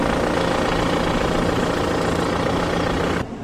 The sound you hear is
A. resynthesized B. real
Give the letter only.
B